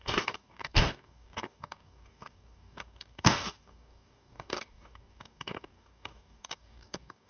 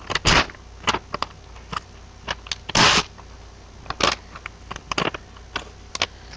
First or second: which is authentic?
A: second